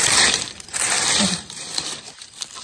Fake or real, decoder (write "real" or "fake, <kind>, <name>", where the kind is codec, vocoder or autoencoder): fake, vocoder, BigVGAN v2